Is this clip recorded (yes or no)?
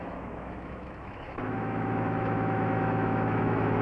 no